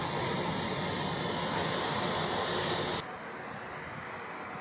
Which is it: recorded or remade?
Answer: recorded